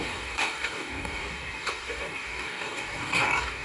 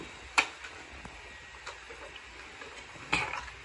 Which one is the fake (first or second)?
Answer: first